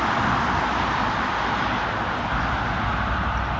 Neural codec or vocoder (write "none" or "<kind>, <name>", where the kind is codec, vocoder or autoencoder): none